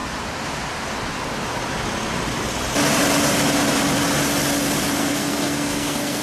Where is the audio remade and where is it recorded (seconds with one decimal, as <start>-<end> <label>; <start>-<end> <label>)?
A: 0.0-5.0 recorded; 5.0-6.2 remade